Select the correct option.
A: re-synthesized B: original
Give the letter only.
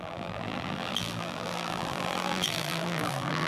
A